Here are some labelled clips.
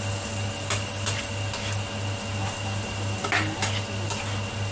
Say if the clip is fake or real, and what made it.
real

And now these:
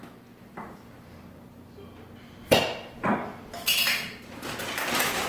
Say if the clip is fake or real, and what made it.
real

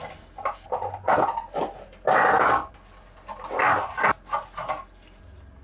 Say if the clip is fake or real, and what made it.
real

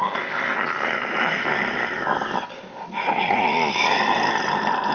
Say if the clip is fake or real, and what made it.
real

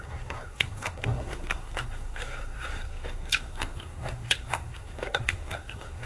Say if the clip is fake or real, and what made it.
fake, codec, SNAC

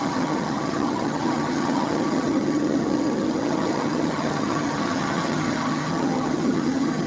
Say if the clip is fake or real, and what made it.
fake, vocoder, HiFi-GAN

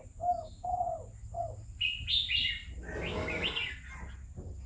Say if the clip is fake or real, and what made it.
real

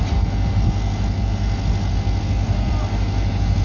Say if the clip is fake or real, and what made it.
real